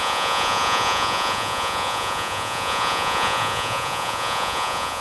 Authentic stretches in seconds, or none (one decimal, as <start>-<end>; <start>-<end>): none